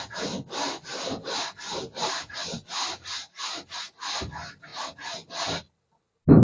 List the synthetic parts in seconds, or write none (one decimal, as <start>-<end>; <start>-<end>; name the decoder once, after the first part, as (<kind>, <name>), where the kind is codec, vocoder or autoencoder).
0.9-3.2 (vocoder, BigVGAN v2)